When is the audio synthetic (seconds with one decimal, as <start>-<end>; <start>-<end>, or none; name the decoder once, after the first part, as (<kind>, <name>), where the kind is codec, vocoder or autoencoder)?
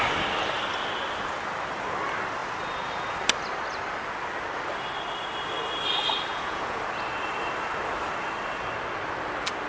6.3-6.8 (vocoder, Vocos)